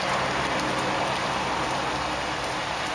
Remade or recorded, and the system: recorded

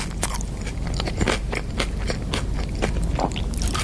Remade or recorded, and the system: recorded